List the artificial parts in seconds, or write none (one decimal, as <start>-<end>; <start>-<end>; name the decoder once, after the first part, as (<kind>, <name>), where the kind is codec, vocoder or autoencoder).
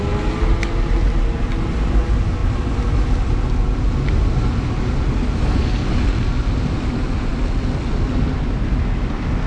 none